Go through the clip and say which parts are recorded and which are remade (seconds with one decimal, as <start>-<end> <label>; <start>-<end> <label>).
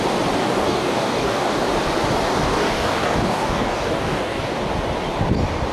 0.0-0.4 recorded; 0.4-1.5 remade; 1.5-2.3 recorded; 2.3-4.6 remade; 4.6-5.7 recorded